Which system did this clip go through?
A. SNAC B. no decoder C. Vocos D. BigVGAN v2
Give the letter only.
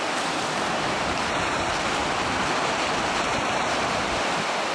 B